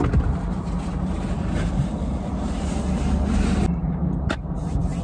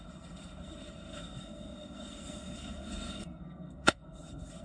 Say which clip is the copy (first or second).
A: second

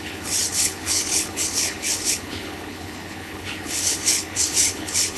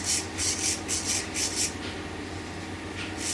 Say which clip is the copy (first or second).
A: first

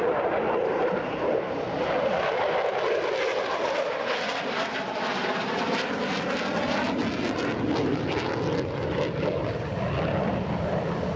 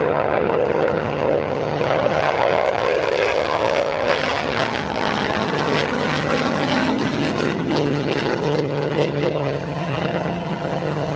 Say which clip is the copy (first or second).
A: second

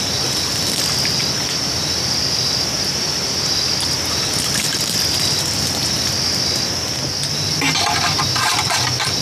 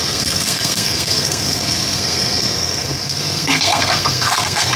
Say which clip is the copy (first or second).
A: second